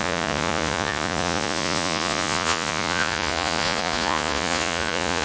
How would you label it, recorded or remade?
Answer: remade